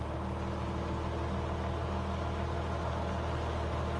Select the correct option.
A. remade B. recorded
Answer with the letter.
B